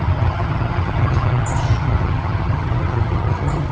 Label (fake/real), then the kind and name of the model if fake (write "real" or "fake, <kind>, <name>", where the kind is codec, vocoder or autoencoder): fake, vocoder, HiFi-GAN